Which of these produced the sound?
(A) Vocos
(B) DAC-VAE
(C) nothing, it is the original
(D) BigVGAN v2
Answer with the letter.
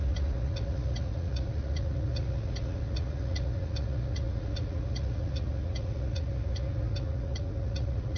A